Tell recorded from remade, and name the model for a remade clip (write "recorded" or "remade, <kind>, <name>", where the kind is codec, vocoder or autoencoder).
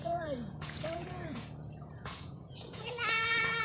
remade, vocoder, Vocos